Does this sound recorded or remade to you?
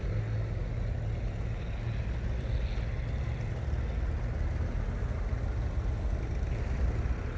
recorded